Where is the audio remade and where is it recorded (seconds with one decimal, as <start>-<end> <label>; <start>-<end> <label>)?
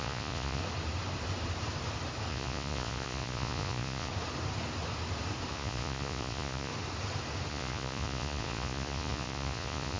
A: 0.0-0.6 remade; 0.6-2.3 recorded; 2.3-4.1 remade; 4.1-5.5 recorded; 5.5-6.7 remade; 6.7-7.5 recorded; 7.5-10.0 remade